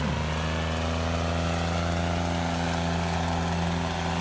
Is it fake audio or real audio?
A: real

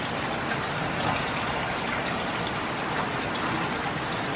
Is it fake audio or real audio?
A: real